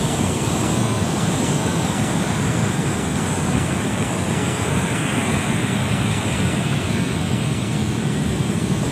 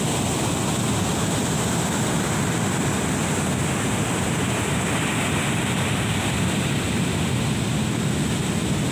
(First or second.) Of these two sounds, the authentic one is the second